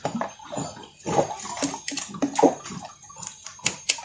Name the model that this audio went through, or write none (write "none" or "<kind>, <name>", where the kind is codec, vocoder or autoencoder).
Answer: none